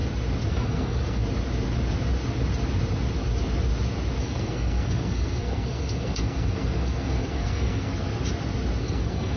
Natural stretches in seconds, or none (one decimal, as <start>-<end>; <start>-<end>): 0.0-0.5; 1.2-4.2; 8.1-8.8